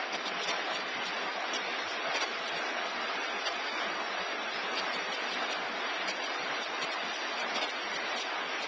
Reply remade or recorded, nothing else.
recorded